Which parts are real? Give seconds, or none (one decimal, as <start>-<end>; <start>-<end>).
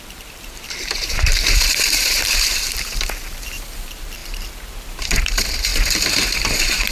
5.7-6.5